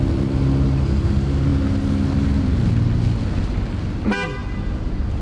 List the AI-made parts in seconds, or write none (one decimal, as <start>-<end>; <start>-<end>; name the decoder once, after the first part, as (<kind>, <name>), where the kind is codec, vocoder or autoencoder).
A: none